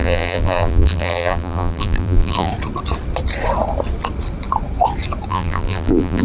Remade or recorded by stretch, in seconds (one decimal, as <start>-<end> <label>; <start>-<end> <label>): 0.0-2.5 remade; 2.5-5.3 recorded; 5.3-6.2 remade